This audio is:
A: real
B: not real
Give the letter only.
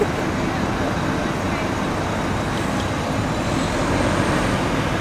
A